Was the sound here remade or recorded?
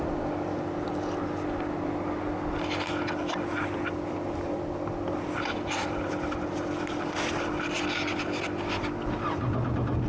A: recorded